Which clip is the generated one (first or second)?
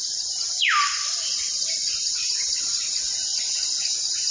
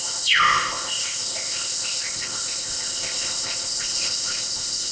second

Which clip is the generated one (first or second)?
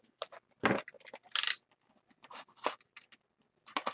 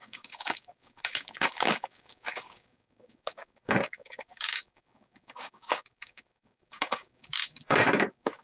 second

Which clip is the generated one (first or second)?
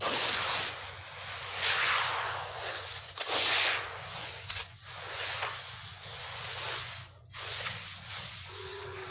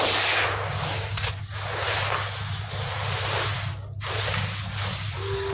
first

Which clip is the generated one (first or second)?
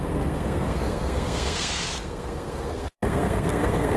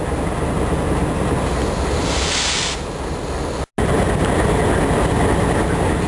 first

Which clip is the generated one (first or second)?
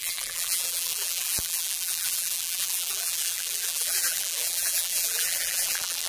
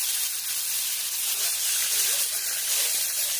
first